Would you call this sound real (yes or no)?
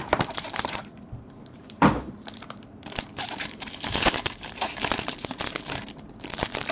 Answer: no